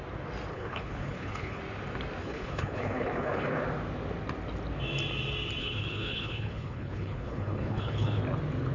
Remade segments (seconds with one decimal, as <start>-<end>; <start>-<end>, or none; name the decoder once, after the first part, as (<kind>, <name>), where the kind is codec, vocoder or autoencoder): 0.5-1.6 (codec, HILCodec); 2.2-3.6; 5.6-8.2